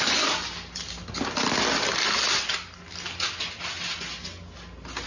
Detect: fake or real real